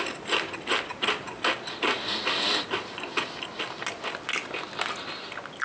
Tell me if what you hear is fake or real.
real